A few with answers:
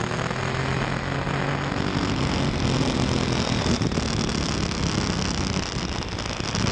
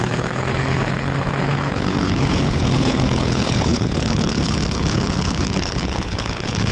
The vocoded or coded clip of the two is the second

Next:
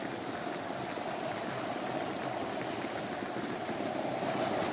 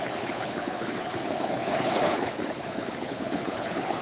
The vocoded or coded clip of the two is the second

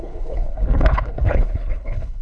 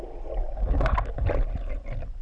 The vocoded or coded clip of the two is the first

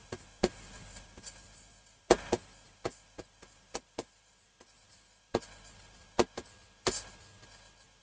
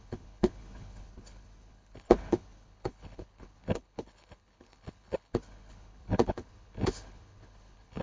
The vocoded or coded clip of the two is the second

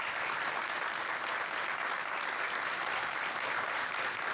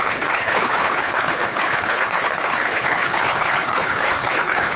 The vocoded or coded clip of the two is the second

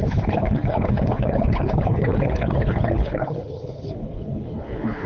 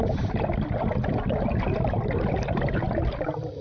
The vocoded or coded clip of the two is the first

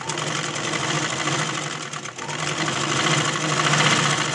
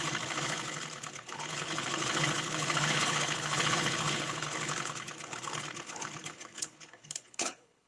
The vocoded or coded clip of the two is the second